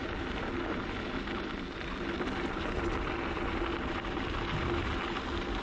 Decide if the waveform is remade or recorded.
recorded